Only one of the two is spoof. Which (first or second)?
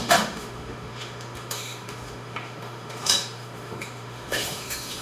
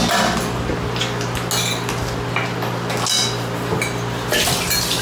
first